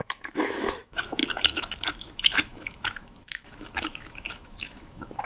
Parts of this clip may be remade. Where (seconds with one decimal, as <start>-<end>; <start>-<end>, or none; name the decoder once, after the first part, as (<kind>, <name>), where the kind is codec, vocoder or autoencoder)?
0.0-5.3 (autoencoder, DAC-VAE)